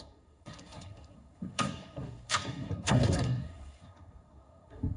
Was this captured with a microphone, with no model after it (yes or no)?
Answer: no